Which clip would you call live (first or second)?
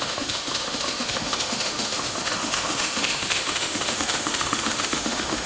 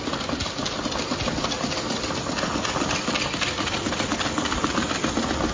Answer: second